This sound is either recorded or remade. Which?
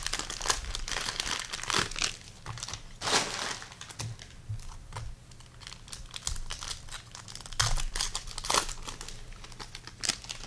recorded